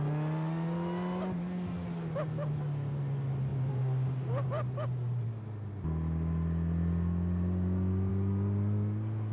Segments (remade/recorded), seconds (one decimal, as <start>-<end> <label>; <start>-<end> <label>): 0.0-9.3 recorded